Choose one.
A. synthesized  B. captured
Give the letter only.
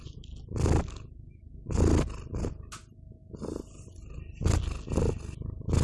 B